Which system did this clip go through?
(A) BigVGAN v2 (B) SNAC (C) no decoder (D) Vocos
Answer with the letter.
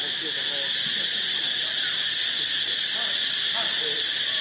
C